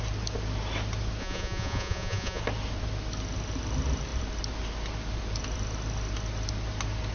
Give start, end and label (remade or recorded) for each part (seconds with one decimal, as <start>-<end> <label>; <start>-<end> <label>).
0.0-1.2 recorded; 1.2-2.4 remade; 2.4-7.1 recorded